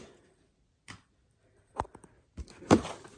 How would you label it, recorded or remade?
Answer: recorded